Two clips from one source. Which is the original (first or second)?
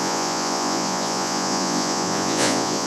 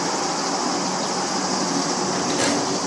second